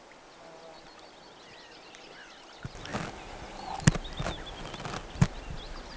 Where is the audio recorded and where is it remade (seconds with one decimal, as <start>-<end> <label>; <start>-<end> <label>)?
0.0-6.0 recorded